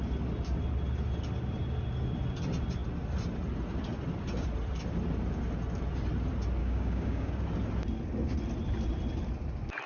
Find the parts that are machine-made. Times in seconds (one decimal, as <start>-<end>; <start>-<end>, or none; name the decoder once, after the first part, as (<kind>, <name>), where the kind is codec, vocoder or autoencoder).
6.6-7.3 (codec, DAC)